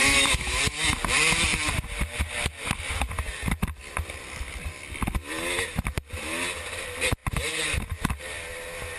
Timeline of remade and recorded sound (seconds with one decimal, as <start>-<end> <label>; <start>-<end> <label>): 0.0-0.6 remade; 0.6-9.0 recorded